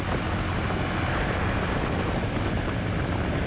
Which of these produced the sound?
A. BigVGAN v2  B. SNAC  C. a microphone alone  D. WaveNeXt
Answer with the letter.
C